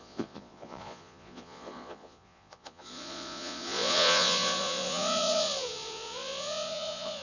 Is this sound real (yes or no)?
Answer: no